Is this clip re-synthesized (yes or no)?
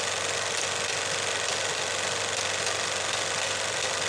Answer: no